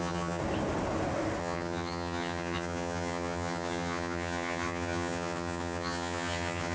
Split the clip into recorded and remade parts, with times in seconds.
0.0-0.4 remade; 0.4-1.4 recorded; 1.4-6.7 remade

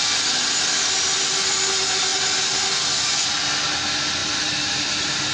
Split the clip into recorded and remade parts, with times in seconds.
0.0-4.2 recorded; 4.2-5.3 remade

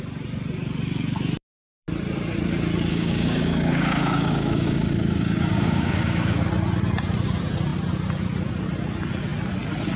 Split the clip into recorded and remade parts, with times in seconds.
0.0-2.9 recorded; 2.9-6.5 remade; 6.5-10.0 recorded

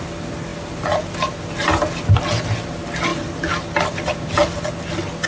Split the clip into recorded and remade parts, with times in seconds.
0.0-5.3 recorded

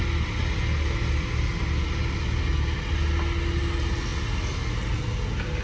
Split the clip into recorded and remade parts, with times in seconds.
0.0-5.6 recorded